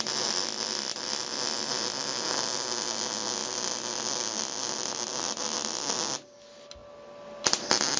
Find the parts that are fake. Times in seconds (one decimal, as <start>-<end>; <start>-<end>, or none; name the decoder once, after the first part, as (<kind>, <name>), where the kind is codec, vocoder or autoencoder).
none